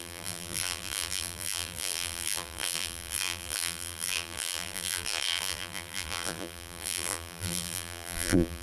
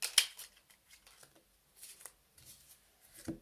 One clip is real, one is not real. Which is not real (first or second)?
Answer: first